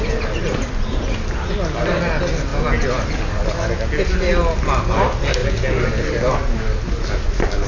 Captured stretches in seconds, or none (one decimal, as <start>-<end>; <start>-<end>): 0.0-7.7